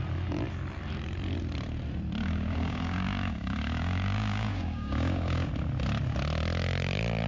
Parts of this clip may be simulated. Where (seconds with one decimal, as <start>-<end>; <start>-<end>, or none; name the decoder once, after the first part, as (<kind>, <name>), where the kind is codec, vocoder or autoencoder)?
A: 2.2-5.5 (codec, DAC)